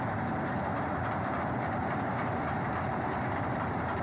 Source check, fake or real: fake